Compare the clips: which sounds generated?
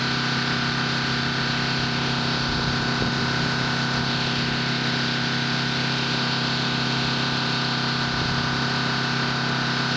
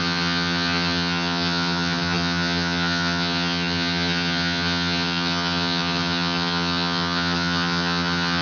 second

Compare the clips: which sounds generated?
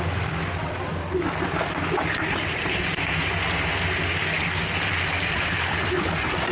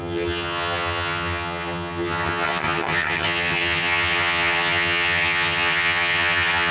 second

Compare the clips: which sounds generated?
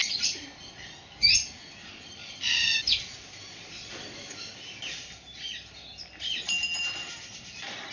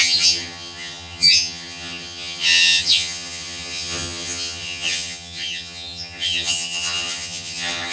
second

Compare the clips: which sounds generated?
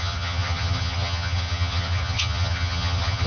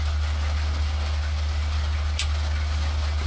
first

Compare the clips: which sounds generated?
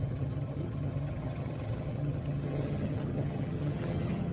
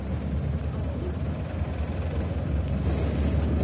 first